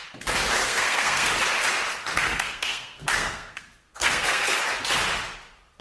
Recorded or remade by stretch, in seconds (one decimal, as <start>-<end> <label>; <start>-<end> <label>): 0.0-0.6 recorded; 0.6-1.3 remade; 1.3-2.1 recorded; 2.1-4.6 remade; 4.6-5.8 recorded